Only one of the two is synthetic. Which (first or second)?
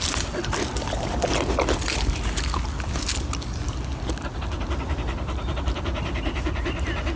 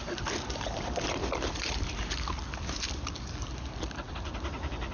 second